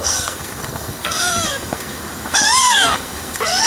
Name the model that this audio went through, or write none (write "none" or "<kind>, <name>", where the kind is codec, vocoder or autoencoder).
codec, SNAC